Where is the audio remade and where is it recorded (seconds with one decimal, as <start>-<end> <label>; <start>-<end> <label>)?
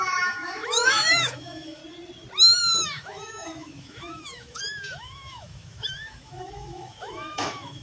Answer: 0.0-1.8 remade; 1.8-2.6 recorded; 2.6-7.8 remade